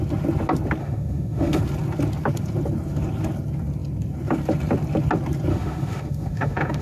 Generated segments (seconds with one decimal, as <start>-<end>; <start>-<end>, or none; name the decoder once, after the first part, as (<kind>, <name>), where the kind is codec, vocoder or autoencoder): 0.8-1.6 (autoencoder, DAC-VAE); 5.5-6.8